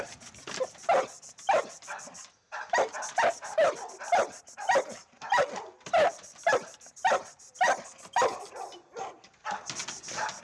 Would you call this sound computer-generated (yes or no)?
no